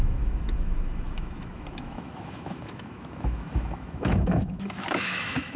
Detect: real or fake fake